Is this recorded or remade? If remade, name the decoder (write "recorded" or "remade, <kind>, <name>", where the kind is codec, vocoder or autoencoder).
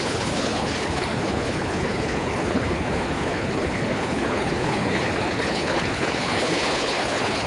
remade, codec, HILCodec